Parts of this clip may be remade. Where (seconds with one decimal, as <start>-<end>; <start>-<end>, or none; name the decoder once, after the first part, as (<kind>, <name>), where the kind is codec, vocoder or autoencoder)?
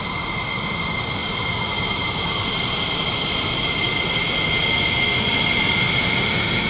1.2-3.3 (vocoder, BigVGAN v2)